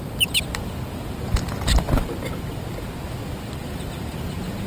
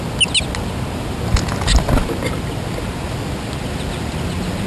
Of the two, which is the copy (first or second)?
first